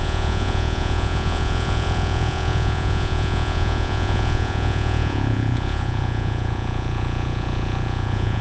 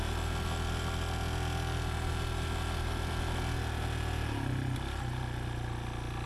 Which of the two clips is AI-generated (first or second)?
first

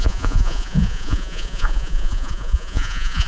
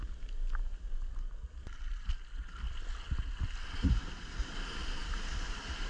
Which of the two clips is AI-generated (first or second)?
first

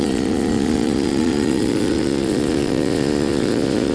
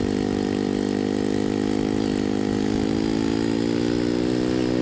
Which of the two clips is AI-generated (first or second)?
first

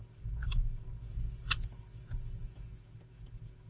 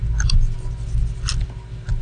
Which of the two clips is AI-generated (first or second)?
first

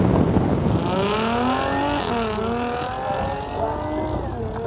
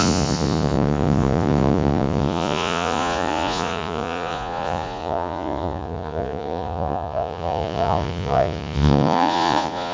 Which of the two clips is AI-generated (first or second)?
second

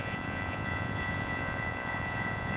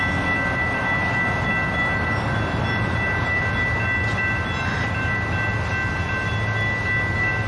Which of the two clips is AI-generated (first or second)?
first